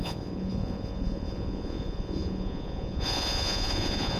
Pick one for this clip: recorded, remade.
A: remade